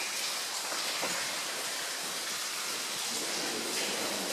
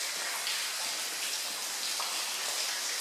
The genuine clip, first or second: second